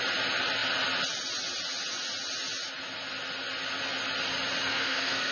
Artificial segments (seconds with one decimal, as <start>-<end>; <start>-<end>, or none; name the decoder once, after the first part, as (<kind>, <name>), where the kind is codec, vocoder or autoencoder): 4.7-5.3 (codec, SNAC)